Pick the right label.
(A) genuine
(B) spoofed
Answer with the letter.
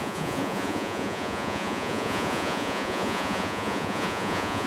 B